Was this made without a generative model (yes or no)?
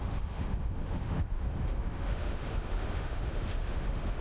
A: no